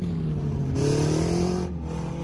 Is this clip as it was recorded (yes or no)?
yes